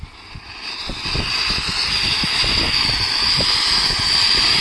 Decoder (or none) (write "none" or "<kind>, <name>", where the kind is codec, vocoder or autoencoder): none